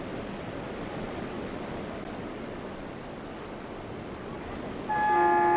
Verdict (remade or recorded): recorded